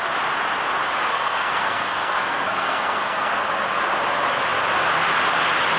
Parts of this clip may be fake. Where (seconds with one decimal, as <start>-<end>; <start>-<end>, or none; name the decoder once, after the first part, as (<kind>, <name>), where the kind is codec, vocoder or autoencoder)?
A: 1.1-3.4 (codec, SNAC)